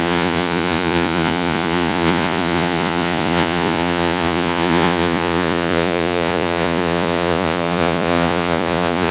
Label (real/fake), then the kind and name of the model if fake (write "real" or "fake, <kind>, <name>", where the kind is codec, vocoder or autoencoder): fake, vocoder, Vocos